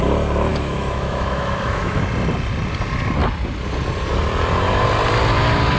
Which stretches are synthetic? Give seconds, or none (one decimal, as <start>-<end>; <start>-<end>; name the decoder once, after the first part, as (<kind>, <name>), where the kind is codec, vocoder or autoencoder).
0.5-2.0 (autoencoder, DAC-VAE)

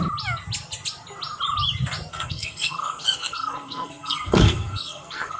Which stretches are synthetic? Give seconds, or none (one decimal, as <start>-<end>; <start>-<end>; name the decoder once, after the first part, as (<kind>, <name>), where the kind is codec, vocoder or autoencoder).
2.1-5.4 (codec, SNAC)

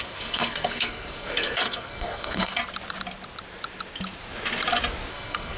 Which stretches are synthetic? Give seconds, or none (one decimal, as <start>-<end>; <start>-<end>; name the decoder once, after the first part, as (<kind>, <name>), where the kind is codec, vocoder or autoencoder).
0.0-2.6 (codec, SNAC); 5.1-5.6

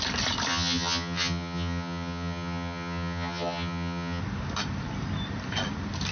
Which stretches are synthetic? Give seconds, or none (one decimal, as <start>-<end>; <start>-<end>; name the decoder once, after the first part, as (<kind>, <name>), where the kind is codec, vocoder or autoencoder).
0.5-4.2 (vocoder, HiFi-GAN)

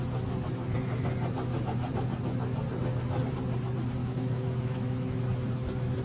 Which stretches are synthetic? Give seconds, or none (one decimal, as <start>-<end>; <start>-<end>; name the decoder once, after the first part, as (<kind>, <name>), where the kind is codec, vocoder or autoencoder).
4.0-5.2 (autoencoder, DAC-VAE)

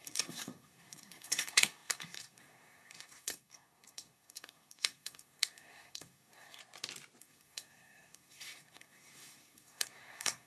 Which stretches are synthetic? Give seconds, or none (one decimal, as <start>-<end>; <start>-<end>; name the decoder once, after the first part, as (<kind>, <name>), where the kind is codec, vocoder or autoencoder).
0.0-6.6 (codec, SNAC); 7.2-10.5

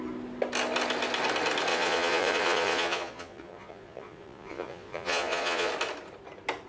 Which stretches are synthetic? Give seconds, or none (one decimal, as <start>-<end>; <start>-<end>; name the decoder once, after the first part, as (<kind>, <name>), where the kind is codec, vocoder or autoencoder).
1.7-5.7 (vocoder, Vocos)

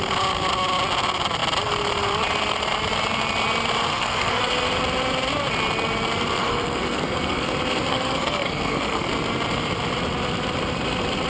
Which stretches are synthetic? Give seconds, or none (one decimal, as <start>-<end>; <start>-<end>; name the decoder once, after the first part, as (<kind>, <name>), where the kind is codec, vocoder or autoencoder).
3.9-4.4 (codec, SNAC); 6.4-7.5; 7.9-9.1